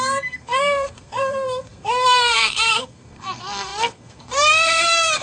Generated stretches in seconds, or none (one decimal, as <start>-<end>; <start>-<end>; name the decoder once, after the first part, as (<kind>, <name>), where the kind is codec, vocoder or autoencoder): 0.0-5.2 (codec, SNAC)

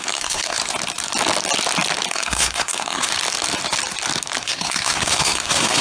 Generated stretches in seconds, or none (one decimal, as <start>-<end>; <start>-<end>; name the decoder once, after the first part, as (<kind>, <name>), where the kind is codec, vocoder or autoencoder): 0.0-0.6 (codec, SNAC); 2.1-3.1; 4.4-5.8

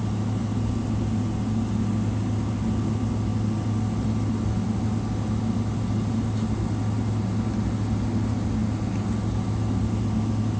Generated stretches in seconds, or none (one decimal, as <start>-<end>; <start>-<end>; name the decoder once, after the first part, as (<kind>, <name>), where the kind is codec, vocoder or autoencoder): none

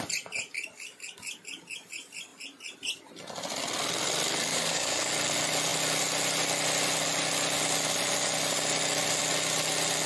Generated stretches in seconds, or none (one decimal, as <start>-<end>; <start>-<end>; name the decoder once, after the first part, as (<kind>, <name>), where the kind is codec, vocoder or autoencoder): 4.5-5.1 (codec, DAC)

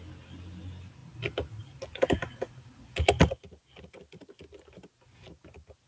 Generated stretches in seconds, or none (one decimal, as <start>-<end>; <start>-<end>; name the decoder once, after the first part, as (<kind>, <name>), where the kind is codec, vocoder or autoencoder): none